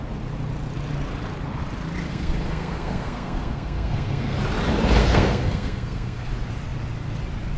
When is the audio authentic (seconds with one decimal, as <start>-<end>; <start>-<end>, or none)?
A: 0.0-2.1; 4.4-5.0; 6.3-7.6